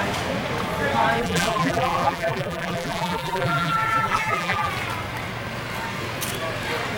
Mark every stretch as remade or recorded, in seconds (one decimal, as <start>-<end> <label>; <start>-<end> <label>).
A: 0.0-1.2 recorded; 1.2-4.7 remade; 4.7-7.0 recorded